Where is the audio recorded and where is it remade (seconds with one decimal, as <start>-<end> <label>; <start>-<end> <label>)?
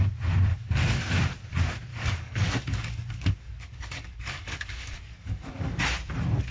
0.0-0.5 recorded; 0.5-1.0 remade; 1.0-1.9 recorded; 1.9-5.8 remade; 5.8-6.5 recorded